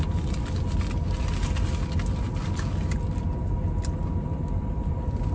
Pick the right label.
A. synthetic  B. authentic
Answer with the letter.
B